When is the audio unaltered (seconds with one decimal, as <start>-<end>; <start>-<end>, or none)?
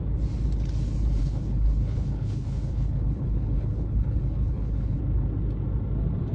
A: 0.0-1.2; 5.0-6.3